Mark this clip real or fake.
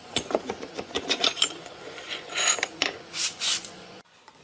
fake